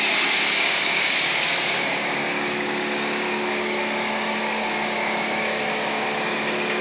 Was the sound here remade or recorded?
remade